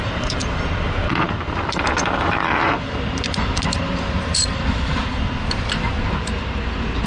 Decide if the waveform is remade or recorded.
remade